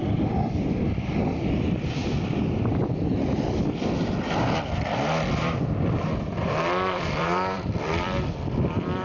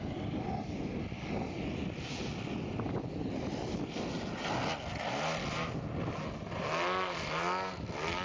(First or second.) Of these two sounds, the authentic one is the second